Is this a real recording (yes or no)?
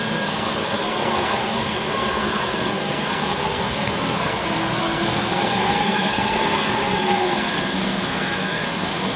no